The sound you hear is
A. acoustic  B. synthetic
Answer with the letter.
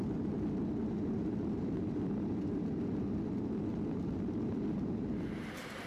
A